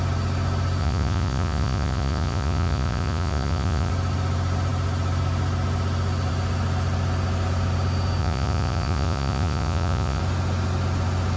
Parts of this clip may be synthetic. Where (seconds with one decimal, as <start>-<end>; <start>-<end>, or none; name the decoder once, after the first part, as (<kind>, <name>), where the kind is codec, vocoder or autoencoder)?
0.8-3.9 (vocoder, Vocos); 8.2-10.2